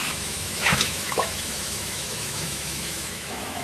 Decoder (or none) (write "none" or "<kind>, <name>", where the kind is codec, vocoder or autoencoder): autoencoder, DAC-VAE